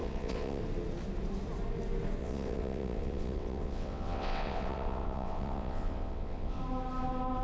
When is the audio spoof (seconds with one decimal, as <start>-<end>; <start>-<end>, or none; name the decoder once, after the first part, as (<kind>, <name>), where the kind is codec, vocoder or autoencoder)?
0.0-0.6 (vocoder, WaveNeXt); 2.2-6.6